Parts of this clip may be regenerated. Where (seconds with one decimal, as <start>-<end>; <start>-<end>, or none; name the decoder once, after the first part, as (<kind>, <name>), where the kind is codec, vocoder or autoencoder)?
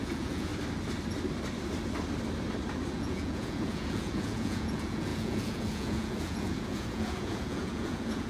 0.0-0.5 (vocoder, Vocos); 2.9-8.3